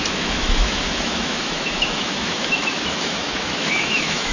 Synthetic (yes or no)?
yes